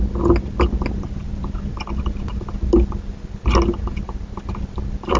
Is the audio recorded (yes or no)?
yes